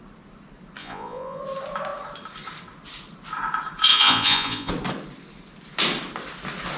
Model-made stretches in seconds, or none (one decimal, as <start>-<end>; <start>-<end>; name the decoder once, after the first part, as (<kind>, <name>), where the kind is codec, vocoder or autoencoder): 0.8-1.4 (vocoder, Vocos); 3.9-4.7